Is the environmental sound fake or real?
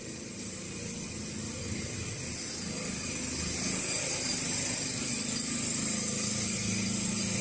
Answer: real